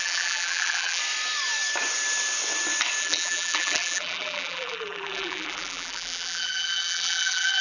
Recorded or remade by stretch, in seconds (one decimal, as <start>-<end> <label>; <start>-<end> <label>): 0.0-1.0 remade; 1.0-3.0 recorded; 3.0-7.6 remade